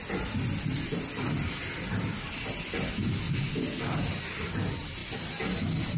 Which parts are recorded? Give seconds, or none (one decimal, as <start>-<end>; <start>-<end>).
0.0-6.0